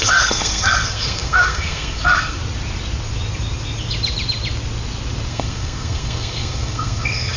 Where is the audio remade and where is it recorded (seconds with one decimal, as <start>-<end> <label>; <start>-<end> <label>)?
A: 0.0-2.4 remade; 2.4-5.3 recorded; 5.3-7.4 remade